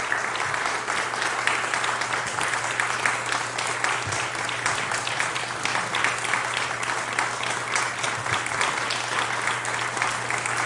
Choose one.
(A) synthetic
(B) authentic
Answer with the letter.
B